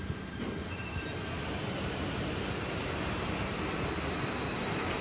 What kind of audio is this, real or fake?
real